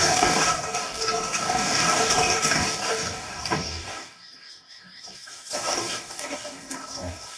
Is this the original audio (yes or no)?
no